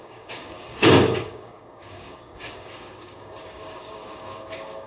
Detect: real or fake fake